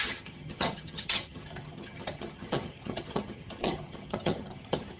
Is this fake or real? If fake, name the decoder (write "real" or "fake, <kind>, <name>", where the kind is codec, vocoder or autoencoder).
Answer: fake, vocoder, HiFi-GAN